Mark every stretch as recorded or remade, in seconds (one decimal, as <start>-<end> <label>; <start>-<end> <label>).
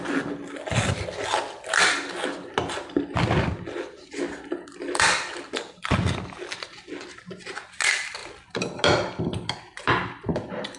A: 0.0-10.8 recorded